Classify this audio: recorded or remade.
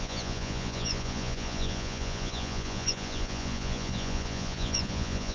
remade